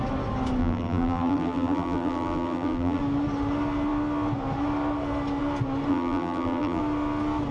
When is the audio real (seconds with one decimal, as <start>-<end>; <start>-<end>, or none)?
0.0-0.6; 3.0-5.9; 6.8-7.5